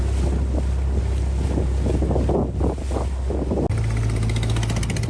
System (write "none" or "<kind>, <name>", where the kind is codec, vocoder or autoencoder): none